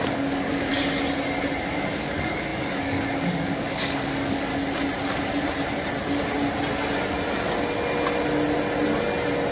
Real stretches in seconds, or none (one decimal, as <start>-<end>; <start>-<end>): 0.7-1.7; 4.5-9.5